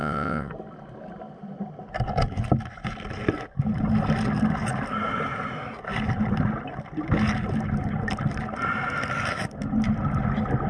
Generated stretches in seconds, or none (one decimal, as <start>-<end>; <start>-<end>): 0.0-0.5